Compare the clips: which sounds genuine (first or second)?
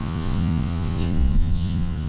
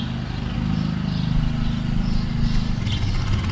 second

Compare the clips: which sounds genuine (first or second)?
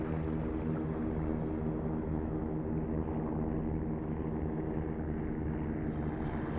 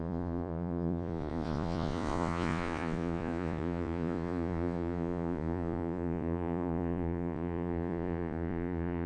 first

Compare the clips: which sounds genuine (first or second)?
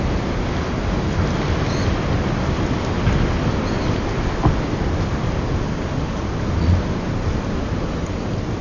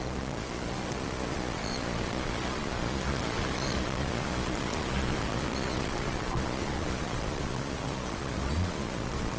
first